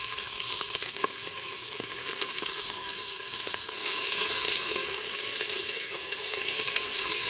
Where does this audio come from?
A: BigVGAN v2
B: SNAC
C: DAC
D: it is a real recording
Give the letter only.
B